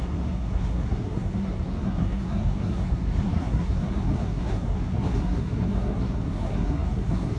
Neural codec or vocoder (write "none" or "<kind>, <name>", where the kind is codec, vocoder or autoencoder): codec, SNAC